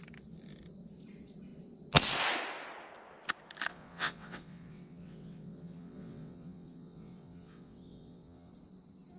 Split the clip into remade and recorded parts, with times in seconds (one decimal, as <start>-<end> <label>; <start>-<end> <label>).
0.0-3.7 recorded; 3.7-8.5 remade; 8.5-9.2 recorded